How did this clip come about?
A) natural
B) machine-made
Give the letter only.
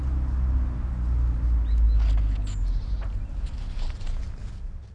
A